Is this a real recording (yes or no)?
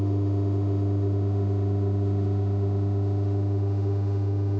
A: no